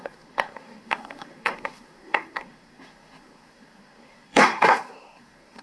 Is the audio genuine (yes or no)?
no